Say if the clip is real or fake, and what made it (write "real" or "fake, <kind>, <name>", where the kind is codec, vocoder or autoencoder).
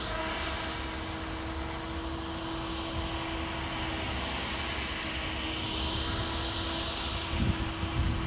real